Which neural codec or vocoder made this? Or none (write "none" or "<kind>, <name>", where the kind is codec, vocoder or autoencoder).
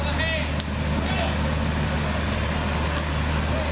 none